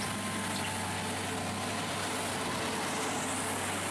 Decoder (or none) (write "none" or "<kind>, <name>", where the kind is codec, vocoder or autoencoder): none